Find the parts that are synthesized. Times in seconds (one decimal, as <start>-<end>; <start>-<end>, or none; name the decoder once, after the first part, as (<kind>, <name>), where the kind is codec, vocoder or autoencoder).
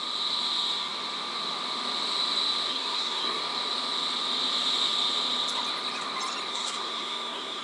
2.7-3.4 (codec, SNAC); 6.5-7.6